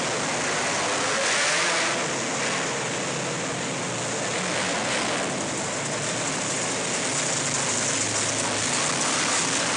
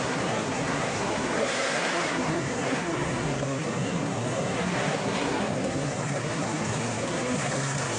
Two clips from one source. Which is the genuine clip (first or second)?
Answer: first